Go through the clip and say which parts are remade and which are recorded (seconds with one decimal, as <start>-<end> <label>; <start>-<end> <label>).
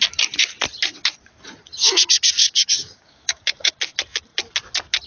0.0-2.4 recorded; 2.4-3.7 remade; 3.7-5.1 recorded